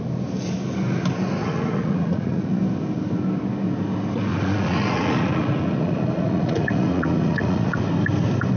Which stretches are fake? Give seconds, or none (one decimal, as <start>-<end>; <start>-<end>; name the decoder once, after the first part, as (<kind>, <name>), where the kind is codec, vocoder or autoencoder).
1.4-2.6 (vocoder, Vocos); 4.3-7.8